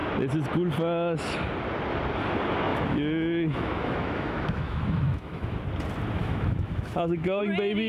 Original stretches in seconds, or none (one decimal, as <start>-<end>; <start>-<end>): 0.0-2.7; 5.6-6.2; 7.4-7.9